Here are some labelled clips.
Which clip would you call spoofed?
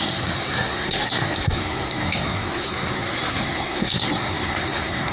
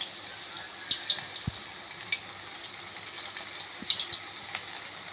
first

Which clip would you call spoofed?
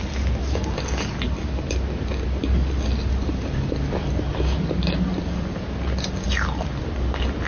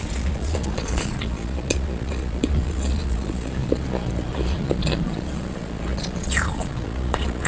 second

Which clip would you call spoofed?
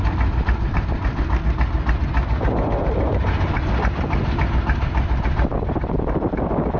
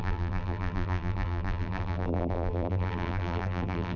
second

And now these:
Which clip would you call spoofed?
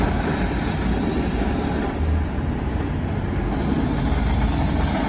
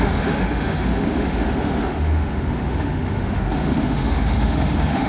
second